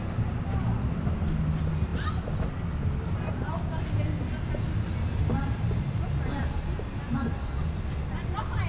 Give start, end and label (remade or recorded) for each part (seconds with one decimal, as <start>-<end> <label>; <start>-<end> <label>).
0.0-8.7 recorded